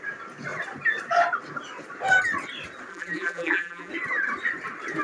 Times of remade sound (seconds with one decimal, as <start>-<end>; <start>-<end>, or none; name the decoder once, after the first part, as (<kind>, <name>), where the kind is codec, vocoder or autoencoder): 2.9-3.9 (vocoder, BigVGAN v2)